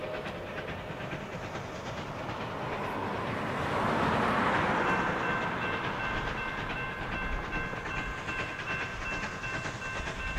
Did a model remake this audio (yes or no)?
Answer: no